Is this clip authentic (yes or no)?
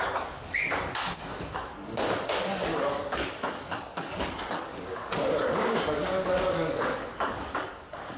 no